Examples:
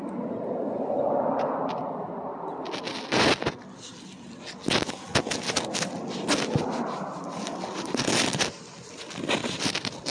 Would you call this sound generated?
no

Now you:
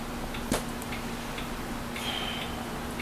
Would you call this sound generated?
no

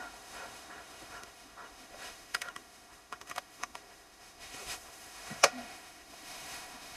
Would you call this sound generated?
yes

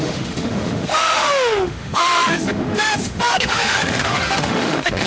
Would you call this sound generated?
yes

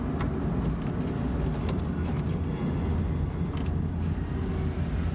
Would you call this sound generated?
no